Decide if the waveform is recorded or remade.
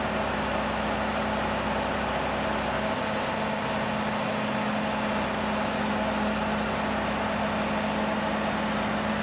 recorded